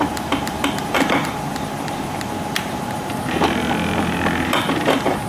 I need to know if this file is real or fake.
fake